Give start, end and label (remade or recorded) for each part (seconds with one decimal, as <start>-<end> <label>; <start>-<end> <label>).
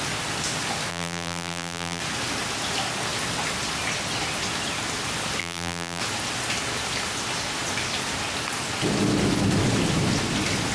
0.0-0.9 recorded; 0.9-2.0 remade; 2.0-5.4 recorded; 5.4-6.0 remade; 6.0-10.7 recorded